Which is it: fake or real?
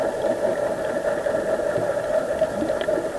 real